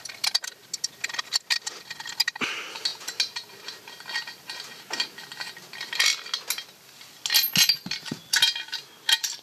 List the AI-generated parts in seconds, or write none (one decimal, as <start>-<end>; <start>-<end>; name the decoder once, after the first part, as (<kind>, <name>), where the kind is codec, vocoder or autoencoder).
none